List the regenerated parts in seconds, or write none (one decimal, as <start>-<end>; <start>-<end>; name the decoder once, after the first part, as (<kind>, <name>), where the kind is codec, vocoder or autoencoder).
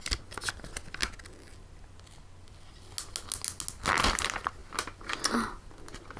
none